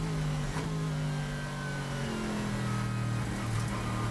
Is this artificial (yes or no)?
no